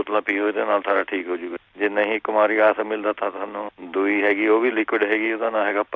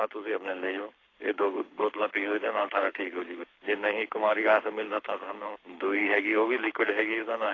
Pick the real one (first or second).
first